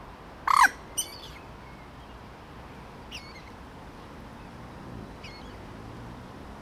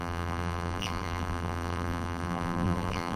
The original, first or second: first